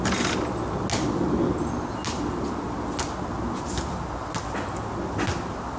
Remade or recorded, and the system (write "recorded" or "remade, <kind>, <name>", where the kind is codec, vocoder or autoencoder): recorded